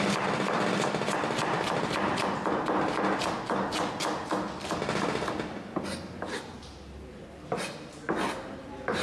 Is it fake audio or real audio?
real